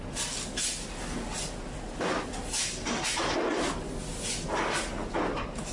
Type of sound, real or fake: real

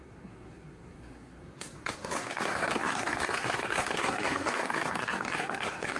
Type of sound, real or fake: fake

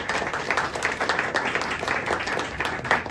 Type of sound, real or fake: real